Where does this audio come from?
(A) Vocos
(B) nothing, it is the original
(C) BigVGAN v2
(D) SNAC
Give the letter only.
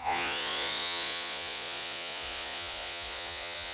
A